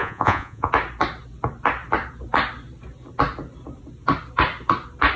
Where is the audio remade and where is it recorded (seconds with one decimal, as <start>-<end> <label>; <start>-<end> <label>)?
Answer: 0.0-0.7 remade; 0.7-5.2 recorded